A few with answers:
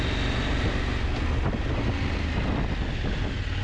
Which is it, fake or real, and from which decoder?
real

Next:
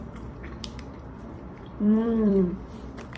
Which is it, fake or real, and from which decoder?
fake, vocoder, BigVGAN v2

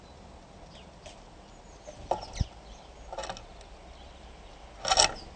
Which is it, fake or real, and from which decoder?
real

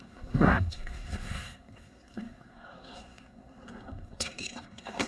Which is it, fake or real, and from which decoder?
fake, codec, SNAC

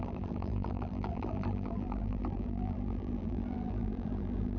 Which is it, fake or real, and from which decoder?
fake, vocoder, BigVGAN v2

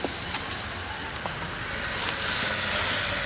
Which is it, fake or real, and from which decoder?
real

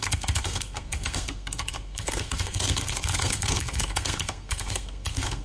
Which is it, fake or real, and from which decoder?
fake, codec, SNAC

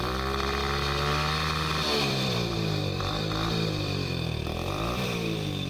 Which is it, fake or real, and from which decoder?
fake, vocoder, BigVGAN v2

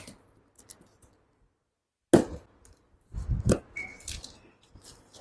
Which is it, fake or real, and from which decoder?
real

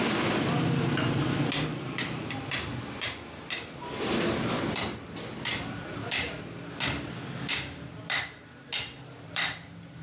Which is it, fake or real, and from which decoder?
fake, vocoder, BigVGAN v2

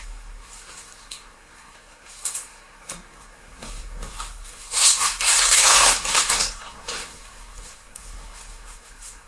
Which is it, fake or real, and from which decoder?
fake, codec, SNAC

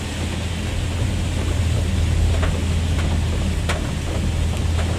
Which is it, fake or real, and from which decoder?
real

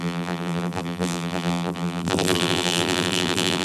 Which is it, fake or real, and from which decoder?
fake, vocoder, BigVGAN v2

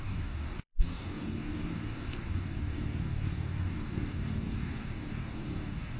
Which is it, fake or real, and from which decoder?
fake, codec, DAC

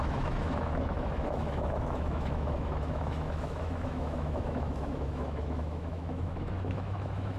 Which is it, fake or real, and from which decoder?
fake, autoencoder, DAC-VAE